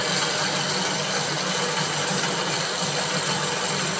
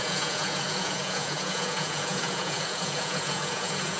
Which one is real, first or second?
first